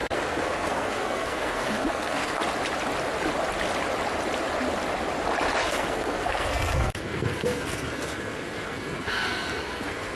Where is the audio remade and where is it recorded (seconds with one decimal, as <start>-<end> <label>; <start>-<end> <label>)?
0.0-2.4 remade; 2.4-5.6 recorded; 5.6-10.2 remade